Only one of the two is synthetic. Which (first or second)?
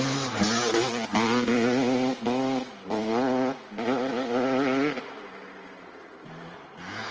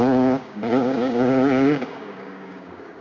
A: second